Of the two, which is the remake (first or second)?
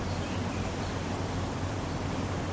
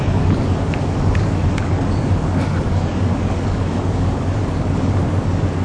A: second